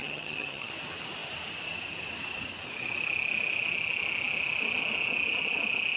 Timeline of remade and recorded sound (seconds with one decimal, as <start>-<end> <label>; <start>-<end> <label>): 0.0-0.7 remade; 0.7-6.0 recorded